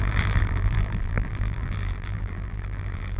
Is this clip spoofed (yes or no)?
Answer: yes